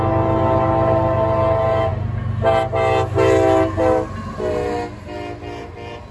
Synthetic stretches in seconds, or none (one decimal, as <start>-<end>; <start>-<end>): none